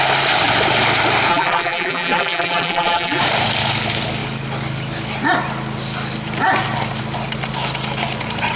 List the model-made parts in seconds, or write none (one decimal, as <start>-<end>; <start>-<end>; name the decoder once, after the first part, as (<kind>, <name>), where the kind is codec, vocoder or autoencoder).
1.3-3.2 (vocoder, BigVGAN v2)